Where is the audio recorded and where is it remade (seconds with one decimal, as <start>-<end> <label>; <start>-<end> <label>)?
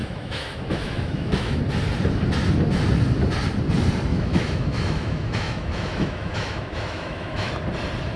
0.0-1.6 remade; 1.6-4.1 recorded; 4.1-7.5 remade; 7.5-8.2 recorded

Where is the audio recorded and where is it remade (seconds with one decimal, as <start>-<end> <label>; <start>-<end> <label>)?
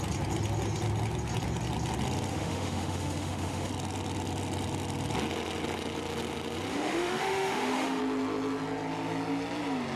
0.0-2.3 recorded; 2.3-3.7 remade; 3.7-6.7 recorded; 6.7-8.0 remade; 8.0-10.0 recorded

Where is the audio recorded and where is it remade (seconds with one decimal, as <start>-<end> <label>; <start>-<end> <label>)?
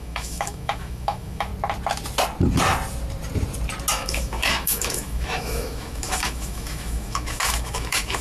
0.0-1.5 remade; 1.5-3.9 recorded; 3.9-8.2 remade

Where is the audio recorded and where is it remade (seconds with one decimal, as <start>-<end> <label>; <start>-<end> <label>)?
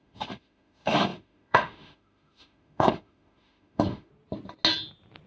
0.0-4.1 remade; 4.1-5.3 recorded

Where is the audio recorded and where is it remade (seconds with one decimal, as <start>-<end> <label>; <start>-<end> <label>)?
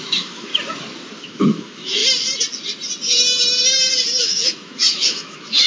0.0-0.5 remade; 0.5-1.2 recorded; 1.2-2.0 remade; 2.0-4.2 recorded; 4.2-5.7 remade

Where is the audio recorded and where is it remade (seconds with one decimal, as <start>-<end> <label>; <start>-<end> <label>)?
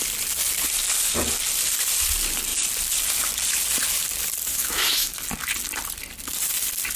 0.0-4.5 recorded; 4.5-5.2 remade; 5.2-7.0 recorded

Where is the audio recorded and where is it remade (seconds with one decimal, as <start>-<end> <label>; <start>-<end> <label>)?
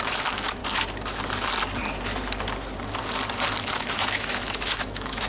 0.0-0.6 remade; 0.6-3.6 recorded; 3.6-5.3 remade